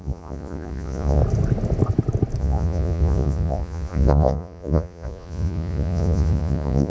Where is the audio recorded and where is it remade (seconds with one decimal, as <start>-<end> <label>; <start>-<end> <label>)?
0.0-1.2 remade; 1.2-2.4 recorded; 2.4-6.9 remade